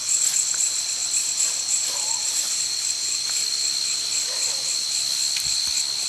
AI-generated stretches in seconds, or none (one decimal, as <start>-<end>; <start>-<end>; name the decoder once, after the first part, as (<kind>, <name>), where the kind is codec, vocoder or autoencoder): none